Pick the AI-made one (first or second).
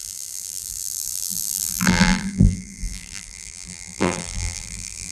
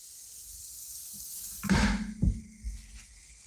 first